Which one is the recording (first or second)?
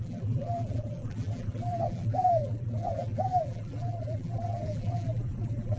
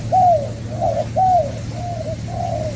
second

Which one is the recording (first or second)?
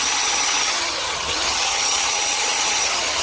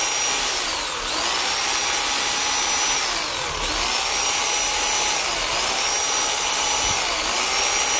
second